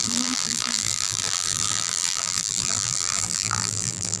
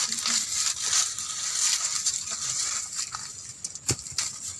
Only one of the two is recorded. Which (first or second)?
second